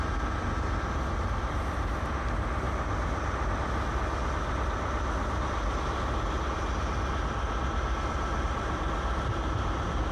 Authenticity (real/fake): real